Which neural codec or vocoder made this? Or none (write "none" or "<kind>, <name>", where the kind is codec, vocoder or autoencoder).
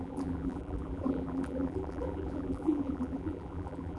vocoder, BigVGAN v2